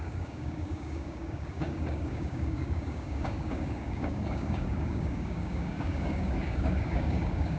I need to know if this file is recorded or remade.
remade